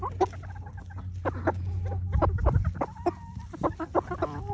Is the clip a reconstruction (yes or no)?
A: no